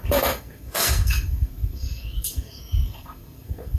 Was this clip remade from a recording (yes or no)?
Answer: yes